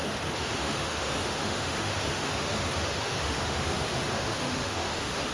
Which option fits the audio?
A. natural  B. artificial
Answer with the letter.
B